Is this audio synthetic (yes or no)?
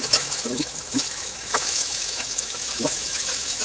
yes